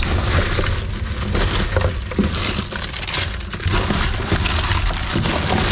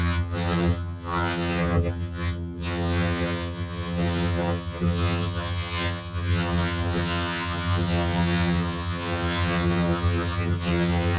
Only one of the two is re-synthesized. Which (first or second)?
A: second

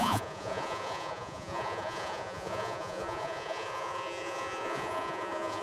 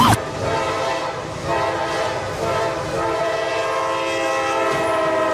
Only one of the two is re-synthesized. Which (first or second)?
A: first